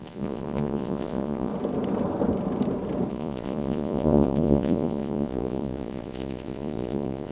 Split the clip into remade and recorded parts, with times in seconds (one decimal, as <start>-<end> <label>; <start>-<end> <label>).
0.0-1.5 remade; 1.5-3.1 recorded; 3.1-7.3 remade